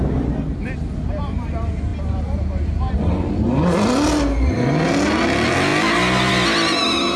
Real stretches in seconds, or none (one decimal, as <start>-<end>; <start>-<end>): 0.0-7.2